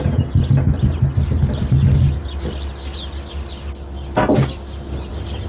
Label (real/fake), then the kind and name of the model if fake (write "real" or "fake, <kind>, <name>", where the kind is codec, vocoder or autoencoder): real